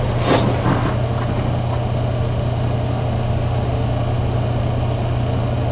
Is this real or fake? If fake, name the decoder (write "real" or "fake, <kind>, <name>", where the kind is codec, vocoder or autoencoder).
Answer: real